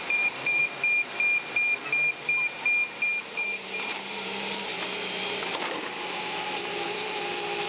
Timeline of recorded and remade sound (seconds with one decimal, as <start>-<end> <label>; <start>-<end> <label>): 0.0-0.6 remade; 0.6-3.2 recorded; 3.2-4.7 remade; 4.7-5.4 recorded; 5.4-7.7 remade